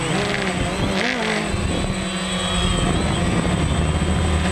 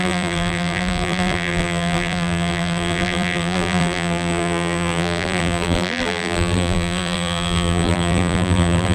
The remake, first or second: second